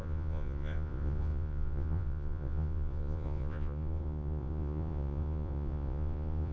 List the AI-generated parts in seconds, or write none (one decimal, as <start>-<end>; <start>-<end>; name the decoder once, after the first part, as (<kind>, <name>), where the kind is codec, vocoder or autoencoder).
0.0-6.5 (vocoder, Vocos)

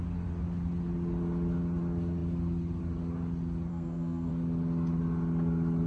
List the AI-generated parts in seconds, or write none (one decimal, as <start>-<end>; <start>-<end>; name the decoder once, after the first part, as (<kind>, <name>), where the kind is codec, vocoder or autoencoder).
3.7-4.3 (codec, SNAC)

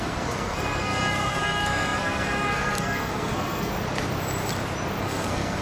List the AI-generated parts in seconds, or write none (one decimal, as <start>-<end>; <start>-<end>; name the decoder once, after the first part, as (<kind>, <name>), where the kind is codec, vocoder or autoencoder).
0.0-3.7 (codec, SNAC); 5.0-5.6

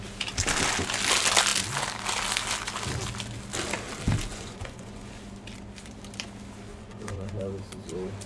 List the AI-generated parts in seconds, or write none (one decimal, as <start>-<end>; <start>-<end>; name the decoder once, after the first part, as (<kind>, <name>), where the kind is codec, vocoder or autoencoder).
4.3-5.2 (vocoder, Vocos); 6.7-7.4

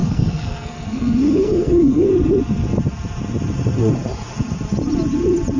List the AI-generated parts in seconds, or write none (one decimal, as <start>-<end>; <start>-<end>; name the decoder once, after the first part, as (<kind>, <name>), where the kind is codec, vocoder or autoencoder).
0.0-2.1 (codec, SNAC)

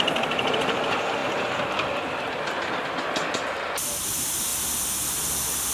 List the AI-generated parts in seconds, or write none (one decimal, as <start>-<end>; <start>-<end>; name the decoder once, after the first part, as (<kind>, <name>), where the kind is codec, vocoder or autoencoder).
0.0-1.2 (vocoder, BigVGAN v2); 1.7-4.5; 5.2-5.7

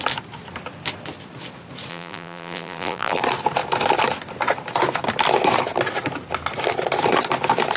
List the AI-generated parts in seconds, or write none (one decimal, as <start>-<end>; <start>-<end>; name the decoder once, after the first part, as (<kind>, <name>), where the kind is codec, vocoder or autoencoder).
1.9-3.2 (vocoder, BigVGAN v2)